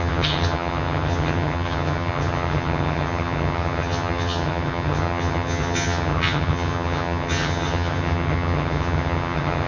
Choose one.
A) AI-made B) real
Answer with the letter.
A